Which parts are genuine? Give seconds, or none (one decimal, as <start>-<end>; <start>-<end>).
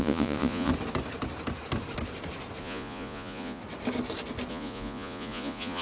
0.7-2.6; 3.6-4.5